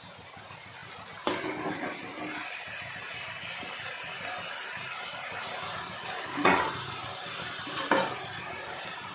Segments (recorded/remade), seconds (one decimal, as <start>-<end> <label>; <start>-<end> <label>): 0.0-7.0 recorded; 7.0-9.1 remade